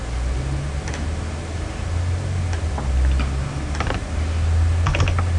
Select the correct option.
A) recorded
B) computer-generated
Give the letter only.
A